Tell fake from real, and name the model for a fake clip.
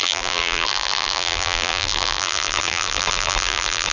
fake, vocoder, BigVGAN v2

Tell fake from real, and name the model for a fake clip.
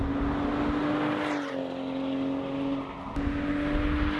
real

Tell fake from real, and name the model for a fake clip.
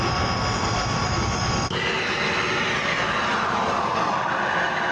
real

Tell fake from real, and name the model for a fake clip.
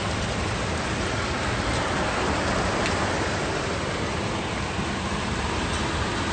real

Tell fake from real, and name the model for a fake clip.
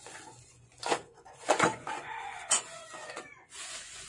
fake, vocoder, Vocos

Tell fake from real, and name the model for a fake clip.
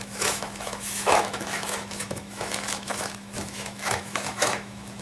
fake, autoencoder, DAC-VAE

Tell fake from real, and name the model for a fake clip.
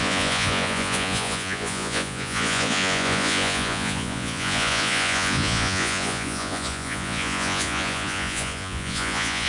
fake, vocoder, Vocos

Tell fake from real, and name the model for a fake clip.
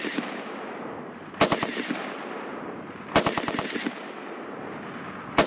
real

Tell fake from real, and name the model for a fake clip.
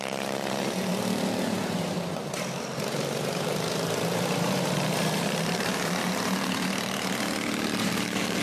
fake, vocoder, BigVGAN v2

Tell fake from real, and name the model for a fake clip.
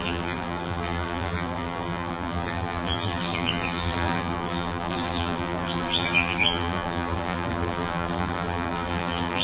fake, vocoder, BigVGAN v2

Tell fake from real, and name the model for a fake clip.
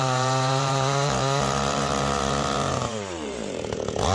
fake, vocoder, BigVGAN v2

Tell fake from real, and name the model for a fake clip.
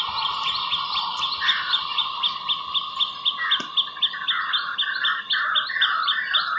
real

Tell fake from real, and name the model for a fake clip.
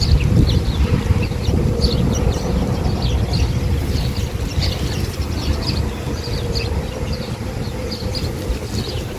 real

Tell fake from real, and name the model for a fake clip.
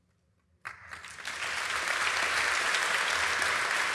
real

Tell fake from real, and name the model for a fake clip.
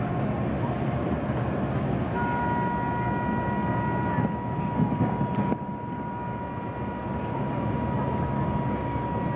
real